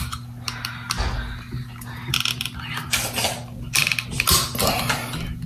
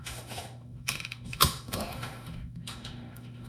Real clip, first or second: first